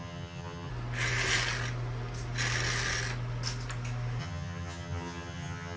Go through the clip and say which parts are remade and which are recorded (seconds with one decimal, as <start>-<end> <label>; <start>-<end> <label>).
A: 0.0-0.7 remade; 0.7-4.2 recorded; 4.2-5.8 remade